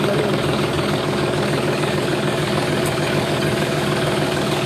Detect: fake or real fake